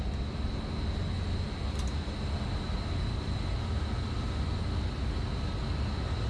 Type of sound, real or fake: real